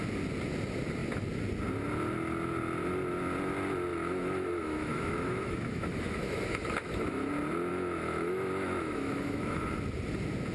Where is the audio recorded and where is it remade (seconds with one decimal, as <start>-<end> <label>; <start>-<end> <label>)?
0.0-3.9 recorded; 3.9-7.3 remade; 7.3-7.7 recorded; 7.7-9.6 remade; 9.6-10.5 recorded